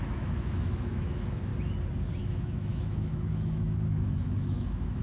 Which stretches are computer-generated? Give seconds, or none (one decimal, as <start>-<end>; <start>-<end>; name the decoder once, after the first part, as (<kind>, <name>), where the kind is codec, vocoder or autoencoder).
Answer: 0.0-1.5 (autoencoder, DAC-VAE); 2.2-5.0